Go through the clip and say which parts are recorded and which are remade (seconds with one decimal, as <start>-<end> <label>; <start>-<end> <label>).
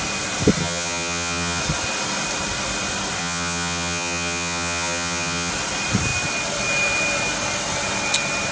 0.0-0.6 recorded; 0.6-1.6 remade; 1.6-3.2 recorded; 3.2-5.5 remade; 5.5-8.5 recorded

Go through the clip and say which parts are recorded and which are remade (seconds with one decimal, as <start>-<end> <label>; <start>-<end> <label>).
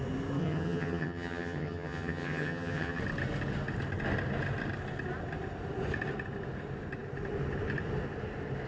0.0-0.4 recorded; 0.4-3.0 remade; 3.0-8.7 recorded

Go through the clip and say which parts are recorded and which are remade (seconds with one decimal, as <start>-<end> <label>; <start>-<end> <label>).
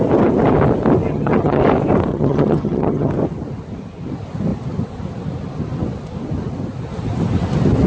0.0-1.1 recorded; 1.1-1.6 remade; 1.6-2.1 recorded; 2.1-3.1 remade; 3.1-7.9 recorded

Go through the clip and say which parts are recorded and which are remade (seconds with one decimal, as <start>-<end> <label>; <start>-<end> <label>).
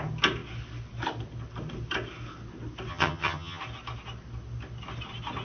0.0-2.9 recorded; 2.9-3.6 remade; 3.6-5.4 recorded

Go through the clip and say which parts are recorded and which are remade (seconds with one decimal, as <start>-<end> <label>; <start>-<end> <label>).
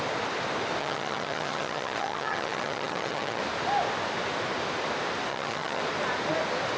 0.0-0.8 recorded; 0.8-3.4 remade; 3.4-5.3 recorded; 5.3-5.8 remade; 5.8-6.8 recorded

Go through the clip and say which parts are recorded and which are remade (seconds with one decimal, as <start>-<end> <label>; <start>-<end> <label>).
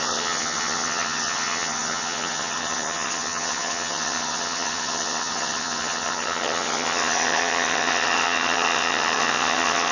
0.0-9.9 remade